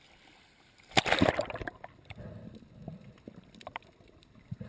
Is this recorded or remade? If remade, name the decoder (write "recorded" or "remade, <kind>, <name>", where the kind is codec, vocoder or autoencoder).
recorded